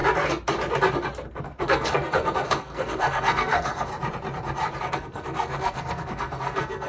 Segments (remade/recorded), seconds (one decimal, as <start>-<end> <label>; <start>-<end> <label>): 0.0-1.3 recorded; 1.3-3.9 remade; 3.9-4.8 recorded; 4.8-6.9 remade